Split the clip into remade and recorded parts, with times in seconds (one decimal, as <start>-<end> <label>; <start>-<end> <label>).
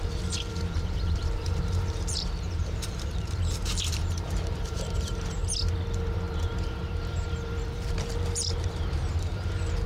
0.0-5.4 remade; 5.4-6.1 recorded; 6.1-9.9 remade